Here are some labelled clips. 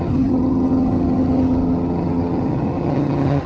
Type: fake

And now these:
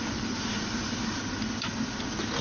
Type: real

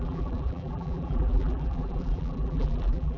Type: fake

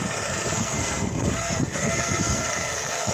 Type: fake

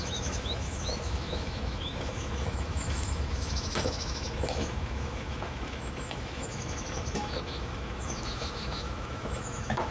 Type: fake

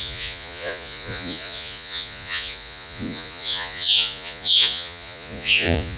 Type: fake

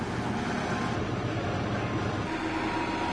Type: real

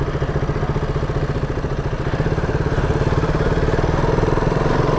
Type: fake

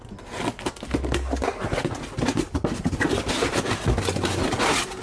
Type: real